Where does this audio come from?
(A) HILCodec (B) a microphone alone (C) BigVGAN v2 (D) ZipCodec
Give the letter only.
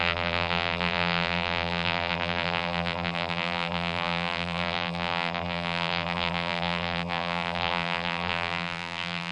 C